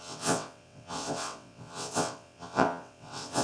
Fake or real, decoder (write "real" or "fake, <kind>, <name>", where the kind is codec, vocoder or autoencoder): fake, vocoder, WaveNeXt